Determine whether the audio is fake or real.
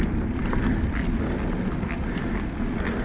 real